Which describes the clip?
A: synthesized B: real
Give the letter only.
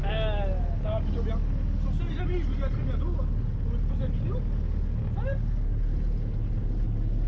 B